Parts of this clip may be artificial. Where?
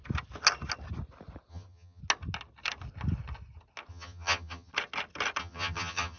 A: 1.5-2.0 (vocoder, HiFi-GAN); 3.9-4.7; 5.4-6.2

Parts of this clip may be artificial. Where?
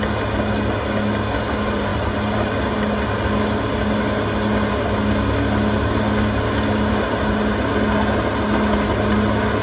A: none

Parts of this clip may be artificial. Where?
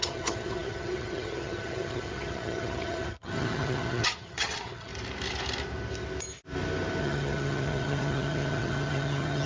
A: 0.0-4.9 (vocoder, HiFi-GAN); 7.0-9.5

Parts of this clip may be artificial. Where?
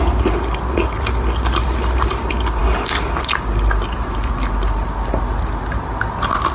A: none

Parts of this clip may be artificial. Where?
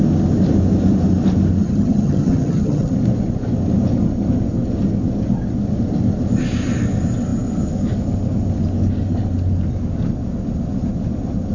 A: 1.6-2.9 (vocoder, HiFi-GAN)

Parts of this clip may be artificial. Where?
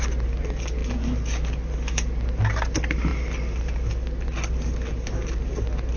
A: none